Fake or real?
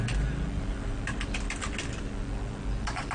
real